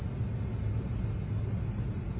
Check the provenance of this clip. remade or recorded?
recorded